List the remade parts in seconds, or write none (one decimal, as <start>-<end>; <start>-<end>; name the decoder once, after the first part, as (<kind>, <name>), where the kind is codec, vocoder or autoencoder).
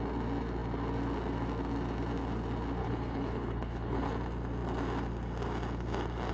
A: 2.8-4.1 (codec, HILCodec)